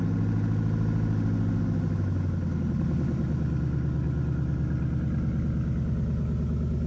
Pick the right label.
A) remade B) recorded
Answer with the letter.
B